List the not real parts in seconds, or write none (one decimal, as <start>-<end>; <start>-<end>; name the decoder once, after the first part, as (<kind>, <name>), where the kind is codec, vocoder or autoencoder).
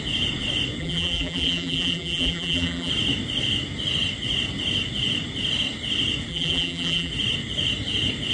0.8-2.9 (vocoder, BigVGAN v2); 6.3-7.1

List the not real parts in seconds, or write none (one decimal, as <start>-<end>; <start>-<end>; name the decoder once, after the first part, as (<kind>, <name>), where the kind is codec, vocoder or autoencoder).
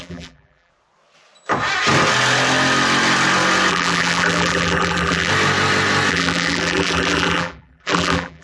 0.0-0.7 (vocoder, BigVGAN v2); 3.7-5.3; 6.1-8.4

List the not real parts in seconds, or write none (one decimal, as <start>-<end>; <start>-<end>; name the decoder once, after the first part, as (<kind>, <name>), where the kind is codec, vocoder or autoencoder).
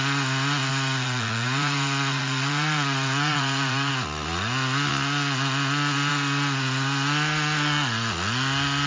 0.7-3.9 (vocoder, Vocos)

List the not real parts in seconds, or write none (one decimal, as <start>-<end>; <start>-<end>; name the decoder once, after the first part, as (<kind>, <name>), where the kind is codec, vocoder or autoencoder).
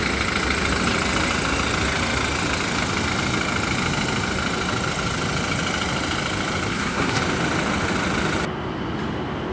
6.7-7.2 (codec, SNAC)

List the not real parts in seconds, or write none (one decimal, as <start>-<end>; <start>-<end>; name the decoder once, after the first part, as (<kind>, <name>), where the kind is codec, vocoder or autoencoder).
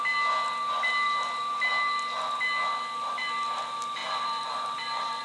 4.0-5.2 (vocoder, BigVGAN v2)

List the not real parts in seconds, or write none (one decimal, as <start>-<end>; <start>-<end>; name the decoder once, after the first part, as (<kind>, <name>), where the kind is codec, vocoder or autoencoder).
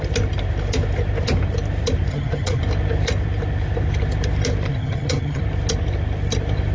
2.1-2.6 (vocoder, HiFi-GAN); 4.7-5.4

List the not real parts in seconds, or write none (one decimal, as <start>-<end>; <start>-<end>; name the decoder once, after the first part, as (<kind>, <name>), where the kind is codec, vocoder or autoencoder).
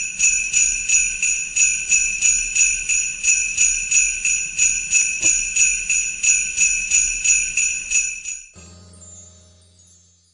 0.0-0.6 (vocoder, BigVGAN v2); 1.9-3.0; 7.5-10.3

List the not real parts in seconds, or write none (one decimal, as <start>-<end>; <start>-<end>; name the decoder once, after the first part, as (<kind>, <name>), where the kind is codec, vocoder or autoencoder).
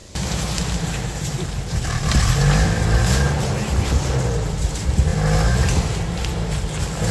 0.0-2.4 (vocoder, BigVGAN v2)